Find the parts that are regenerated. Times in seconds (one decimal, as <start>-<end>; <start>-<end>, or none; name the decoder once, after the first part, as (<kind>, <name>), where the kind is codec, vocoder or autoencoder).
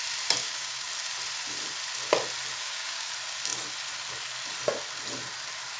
0.4-0.9 (codec, DAC); 2.6-3.1